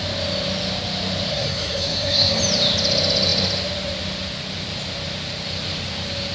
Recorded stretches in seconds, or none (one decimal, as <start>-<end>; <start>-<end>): 0.0-1.3; 2.4-6.3